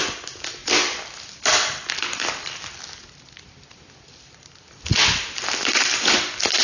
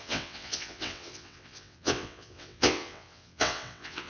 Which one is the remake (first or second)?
second